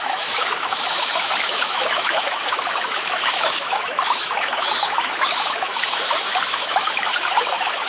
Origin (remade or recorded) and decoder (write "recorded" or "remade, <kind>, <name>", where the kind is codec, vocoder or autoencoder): remade, autoencoder, DAC-VAE